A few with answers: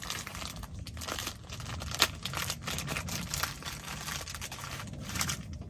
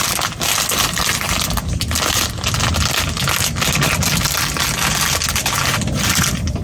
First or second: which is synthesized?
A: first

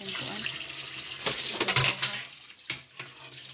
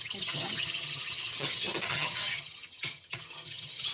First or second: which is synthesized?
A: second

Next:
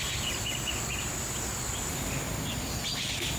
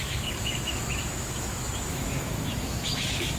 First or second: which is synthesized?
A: second